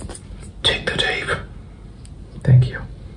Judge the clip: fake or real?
real